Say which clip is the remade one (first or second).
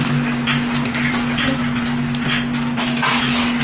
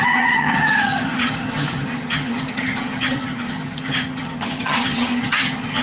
second